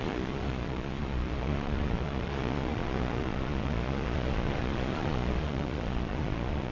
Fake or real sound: fake